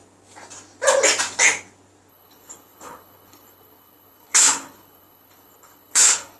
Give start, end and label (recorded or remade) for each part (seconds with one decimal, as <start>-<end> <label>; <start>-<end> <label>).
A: 0.0-2.1 recorded; 2.1-6.4 remade